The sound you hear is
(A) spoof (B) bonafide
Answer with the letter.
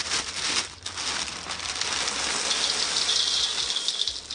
B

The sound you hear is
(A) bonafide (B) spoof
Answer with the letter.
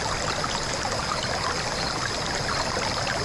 A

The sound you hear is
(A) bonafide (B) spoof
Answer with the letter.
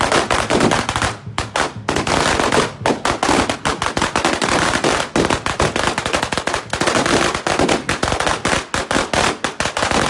A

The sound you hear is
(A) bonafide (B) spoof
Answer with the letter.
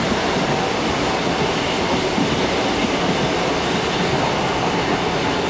A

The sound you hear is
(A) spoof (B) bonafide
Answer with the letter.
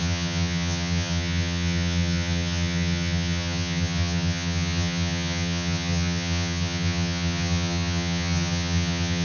A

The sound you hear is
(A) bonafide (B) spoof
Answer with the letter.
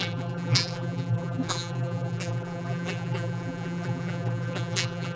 B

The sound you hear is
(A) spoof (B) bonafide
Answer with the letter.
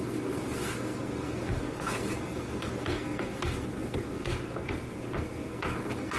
A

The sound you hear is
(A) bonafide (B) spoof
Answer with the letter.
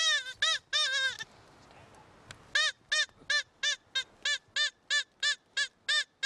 A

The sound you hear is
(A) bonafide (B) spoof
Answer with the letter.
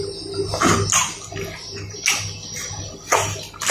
A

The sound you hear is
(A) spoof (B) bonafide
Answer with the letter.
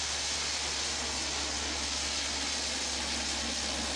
B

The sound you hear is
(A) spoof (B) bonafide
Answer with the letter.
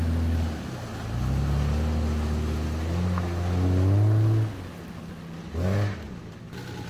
B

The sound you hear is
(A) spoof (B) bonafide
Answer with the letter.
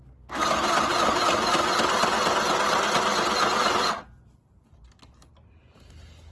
B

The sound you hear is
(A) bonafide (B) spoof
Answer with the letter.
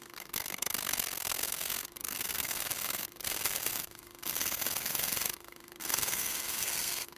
B